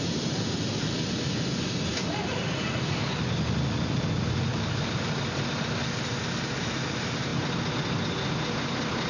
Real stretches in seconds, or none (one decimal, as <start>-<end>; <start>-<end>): 0.0-9.1